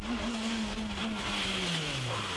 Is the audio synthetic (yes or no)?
no